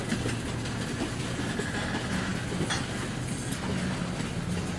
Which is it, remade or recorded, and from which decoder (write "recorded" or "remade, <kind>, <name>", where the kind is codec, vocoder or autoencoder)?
recorded